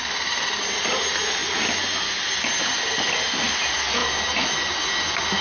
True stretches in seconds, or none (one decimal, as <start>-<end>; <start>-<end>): 0.0-5.4